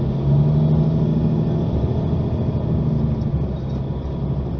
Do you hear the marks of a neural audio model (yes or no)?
no